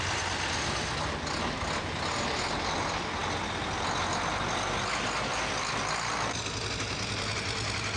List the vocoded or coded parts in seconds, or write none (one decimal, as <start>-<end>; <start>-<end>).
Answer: none